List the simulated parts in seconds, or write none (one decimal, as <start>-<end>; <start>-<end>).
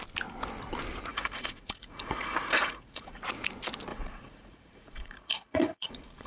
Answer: 1.1-3.2; 3.9-6.3